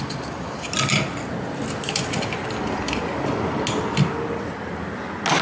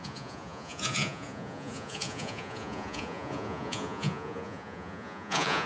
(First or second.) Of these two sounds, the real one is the first